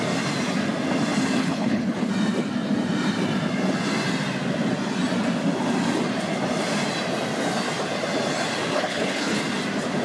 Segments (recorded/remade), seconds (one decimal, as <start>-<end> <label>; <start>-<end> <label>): 0.0-1.4 recorded; 1.4-2.1 remade; 2.1-8.7 recorded; 8.7-9.4 remade; 9.4-10.0 recorded